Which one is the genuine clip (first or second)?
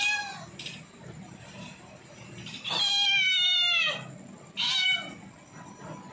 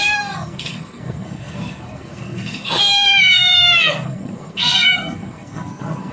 first